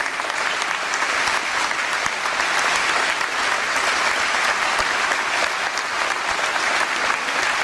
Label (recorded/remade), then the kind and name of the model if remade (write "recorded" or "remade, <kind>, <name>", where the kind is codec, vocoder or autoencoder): recorded